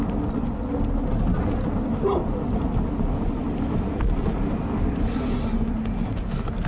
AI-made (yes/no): no